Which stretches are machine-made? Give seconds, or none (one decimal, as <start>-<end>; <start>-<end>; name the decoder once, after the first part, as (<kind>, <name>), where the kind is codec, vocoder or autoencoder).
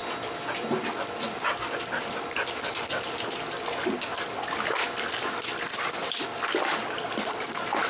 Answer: none